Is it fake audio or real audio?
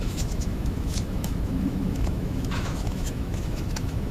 fake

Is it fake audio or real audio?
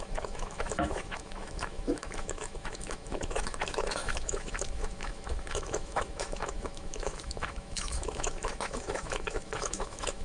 fake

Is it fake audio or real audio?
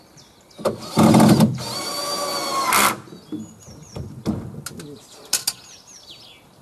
real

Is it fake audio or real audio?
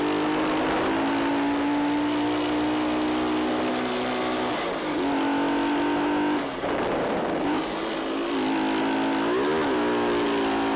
real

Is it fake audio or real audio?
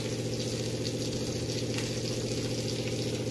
real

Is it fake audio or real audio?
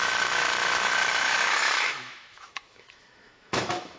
fake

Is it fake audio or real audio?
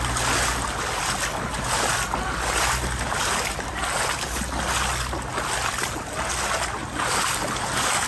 real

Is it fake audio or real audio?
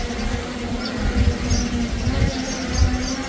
real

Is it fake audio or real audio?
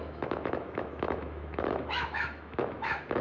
fake